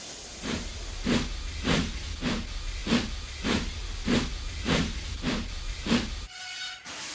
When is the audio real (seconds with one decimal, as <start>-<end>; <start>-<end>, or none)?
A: 0.0-2.8